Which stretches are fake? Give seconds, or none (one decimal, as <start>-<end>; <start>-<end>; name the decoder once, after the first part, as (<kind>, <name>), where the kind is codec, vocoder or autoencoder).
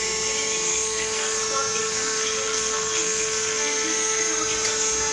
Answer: 0.7-1.4 (codec, SNAC); 1.8-4.2